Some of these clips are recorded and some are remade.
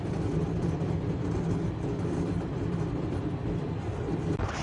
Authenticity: recorded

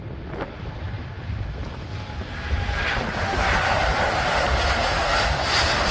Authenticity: recorded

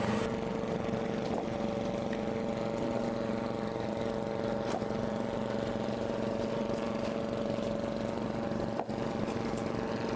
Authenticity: recorded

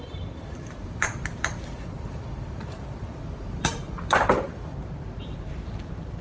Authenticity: remade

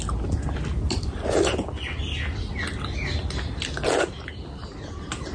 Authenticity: recorded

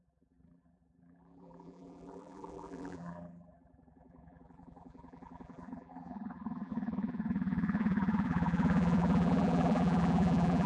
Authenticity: remade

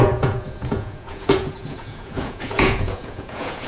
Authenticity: remade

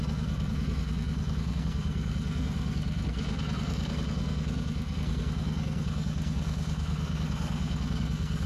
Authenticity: remade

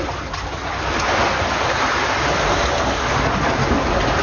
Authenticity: recorded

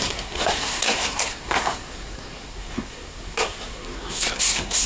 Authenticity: remade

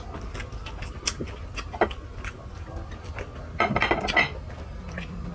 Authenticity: recorded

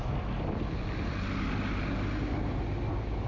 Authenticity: recorded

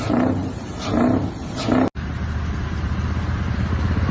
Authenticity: recorded